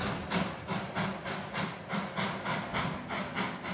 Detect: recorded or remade recorded